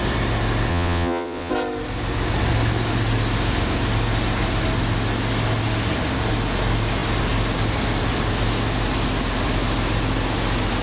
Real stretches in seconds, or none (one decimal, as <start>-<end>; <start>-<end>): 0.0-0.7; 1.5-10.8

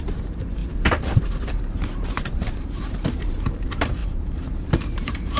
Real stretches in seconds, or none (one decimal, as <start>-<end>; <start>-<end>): 0.6-1.5

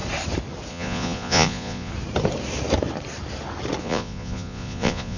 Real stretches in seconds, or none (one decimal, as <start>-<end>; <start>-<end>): 0.0-0.7; 1.9-3.8